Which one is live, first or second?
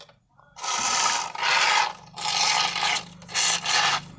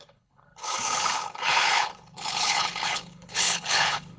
first